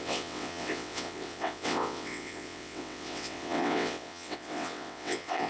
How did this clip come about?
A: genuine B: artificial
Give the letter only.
B